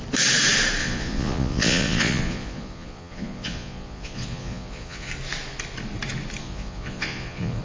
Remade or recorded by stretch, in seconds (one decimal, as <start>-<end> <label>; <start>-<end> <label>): 0.0-0.8 recorded; 0.8-5.1 remade; 5.1-6.4 recorded; 6.4-7.6 remade